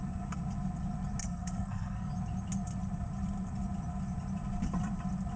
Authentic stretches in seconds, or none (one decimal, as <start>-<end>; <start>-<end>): 0.0-1.2; 2.1-5.4